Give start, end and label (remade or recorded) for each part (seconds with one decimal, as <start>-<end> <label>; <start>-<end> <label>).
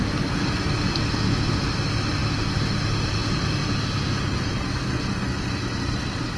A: 0.0-6.4 recorded